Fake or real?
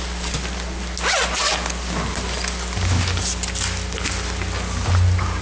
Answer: real